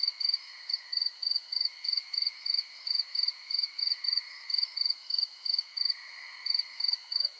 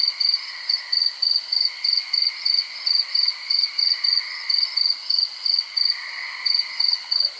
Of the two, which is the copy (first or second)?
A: first